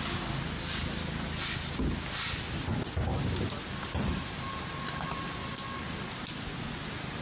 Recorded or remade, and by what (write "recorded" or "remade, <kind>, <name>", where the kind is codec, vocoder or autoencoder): recorded